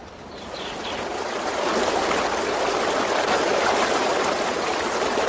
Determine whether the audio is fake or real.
fake